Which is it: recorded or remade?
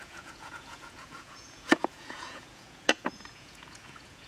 remade